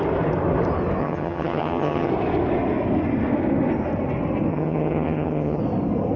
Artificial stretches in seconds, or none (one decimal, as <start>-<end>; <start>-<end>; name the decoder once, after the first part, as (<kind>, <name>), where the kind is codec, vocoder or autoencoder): 1.0-2.1 (vocoder, HiFi-GAN); 4.5-5.6